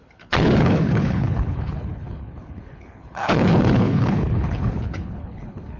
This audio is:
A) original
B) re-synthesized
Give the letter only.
B